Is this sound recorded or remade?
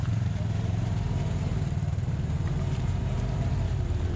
remade